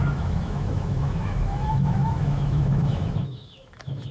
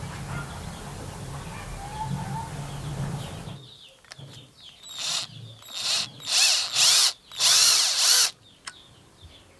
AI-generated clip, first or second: first